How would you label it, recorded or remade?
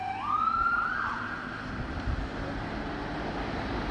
recorded